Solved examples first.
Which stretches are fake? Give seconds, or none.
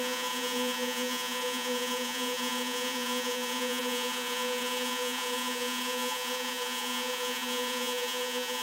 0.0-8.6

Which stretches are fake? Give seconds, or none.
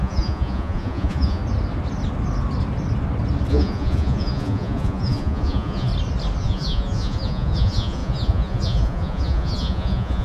0.0-1.4; 3.5-5.9; 6.4-10.2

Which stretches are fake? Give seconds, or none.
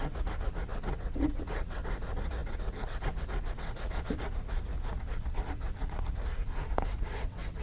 0.0-7.6